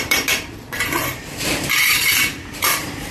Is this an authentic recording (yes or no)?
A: no